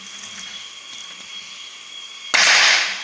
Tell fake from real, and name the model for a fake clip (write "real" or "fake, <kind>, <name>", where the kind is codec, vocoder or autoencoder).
real